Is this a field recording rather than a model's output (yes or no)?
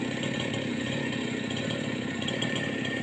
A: no